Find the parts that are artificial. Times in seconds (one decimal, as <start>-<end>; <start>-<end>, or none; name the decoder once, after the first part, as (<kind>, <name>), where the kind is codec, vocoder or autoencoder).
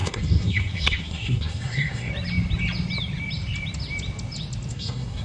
0.0-2.1 (codec, SNAC); 4.7-5.2